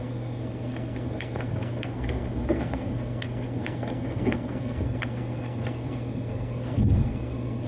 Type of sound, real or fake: fake